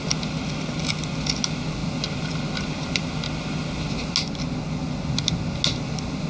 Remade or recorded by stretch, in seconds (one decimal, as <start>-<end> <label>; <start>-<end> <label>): 0.0-6.3 recorded